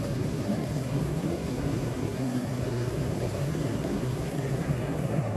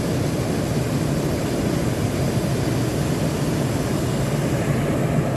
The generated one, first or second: first